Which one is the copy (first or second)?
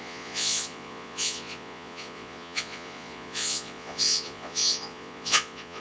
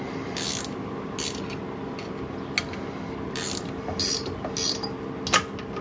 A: first